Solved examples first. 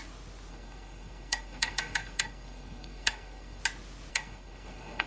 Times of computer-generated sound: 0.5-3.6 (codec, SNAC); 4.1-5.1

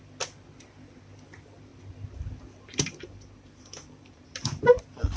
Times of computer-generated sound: 1.7-4.8 (vocoder, BigVGAN v2)

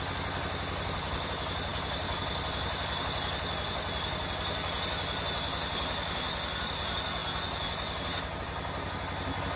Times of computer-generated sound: none

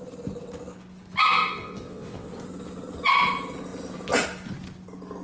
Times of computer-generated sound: 1.4-2.3 (vocoder, WaveNeXt)

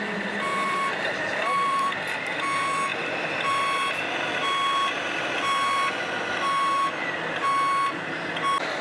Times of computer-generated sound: 0.5-2.0 (vocoder, BigVGAN v2); 2.9-4.1